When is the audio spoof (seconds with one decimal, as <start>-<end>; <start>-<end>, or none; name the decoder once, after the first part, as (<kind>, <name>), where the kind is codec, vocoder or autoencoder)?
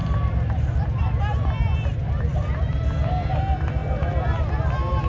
0.0-1.2 (vocoder, BigVGAN v2); 2.0-2.8